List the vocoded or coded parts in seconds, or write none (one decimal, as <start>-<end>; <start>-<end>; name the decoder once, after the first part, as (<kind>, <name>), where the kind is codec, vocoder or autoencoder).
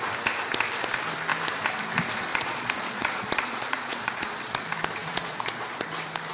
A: 2.3-4.6 (vocoder, Vocos); 5.0-5.8